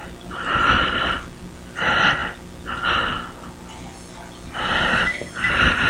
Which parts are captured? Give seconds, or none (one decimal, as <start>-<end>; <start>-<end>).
2.2-5.9